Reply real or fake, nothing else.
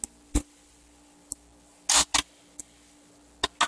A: real